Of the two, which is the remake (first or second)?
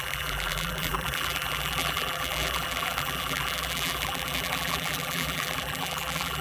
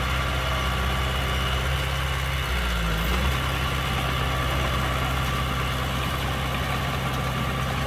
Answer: first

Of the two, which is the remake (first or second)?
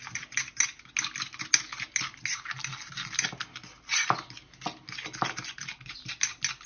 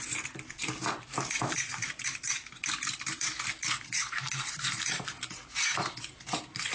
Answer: second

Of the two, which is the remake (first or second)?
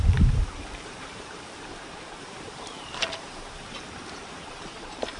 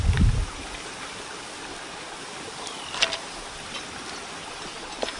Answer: first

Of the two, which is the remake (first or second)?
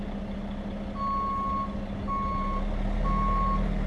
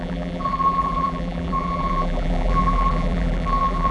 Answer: second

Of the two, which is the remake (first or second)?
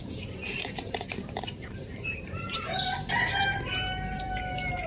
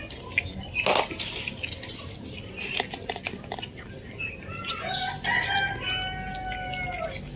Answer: first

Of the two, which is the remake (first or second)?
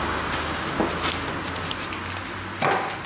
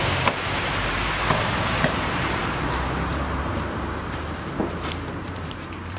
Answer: second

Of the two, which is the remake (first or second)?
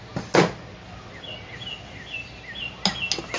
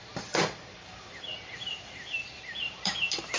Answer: second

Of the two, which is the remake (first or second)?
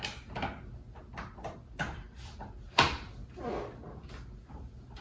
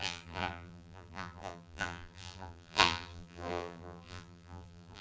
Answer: second